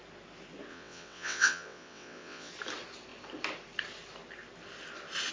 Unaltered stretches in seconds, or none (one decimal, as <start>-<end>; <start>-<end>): 0.0-0.7; 2.5-5.3